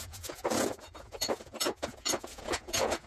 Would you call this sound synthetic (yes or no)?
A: yes